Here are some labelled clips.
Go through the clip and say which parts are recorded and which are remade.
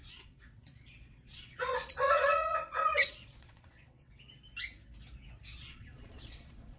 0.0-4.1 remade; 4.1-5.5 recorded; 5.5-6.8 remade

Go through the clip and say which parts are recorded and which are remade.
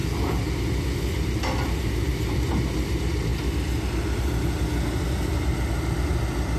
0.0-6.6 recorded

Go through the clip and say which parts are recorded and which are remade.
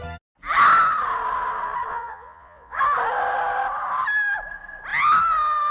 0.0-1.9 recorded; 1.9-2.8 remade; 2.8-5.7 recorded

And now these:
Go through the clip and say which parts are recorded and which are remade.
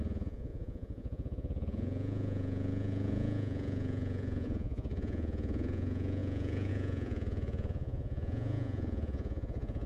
0.0-9.9 remade